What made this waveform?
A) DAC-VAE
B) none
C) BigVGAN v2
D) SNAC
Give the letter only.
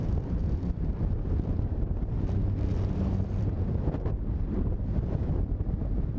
C